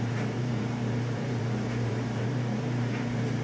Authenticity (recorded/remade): remade